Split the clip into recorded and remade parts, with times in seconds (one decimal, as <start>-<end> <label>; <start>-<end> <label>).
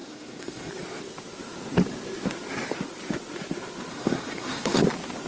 0.0-0.7 remade; 0.7-3.9 recorded; 3.9-4.8 remade; 4.8-5.3 recorded